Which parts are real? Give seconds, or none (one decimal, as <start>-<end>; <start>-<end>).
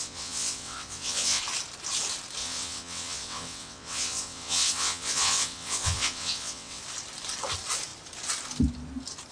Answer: 1.4-2.4; 6.8-9.3